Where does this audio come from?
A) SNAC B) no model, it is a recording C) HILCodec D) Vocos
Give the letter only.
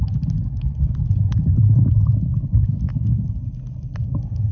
B